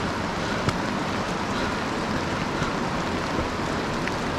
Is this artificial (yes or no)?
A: no